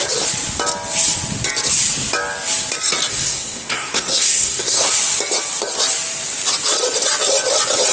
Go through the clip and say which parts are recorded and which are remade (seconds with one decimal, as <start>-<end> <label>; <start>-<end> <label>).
0.0-3.1 recorded; 3.1-4.9 remade; 4.9-7.9 recorded